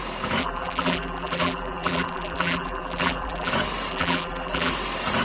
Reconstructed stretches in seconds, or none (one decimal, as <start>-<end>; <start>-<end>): 0.4-3.5; 3.9-4.7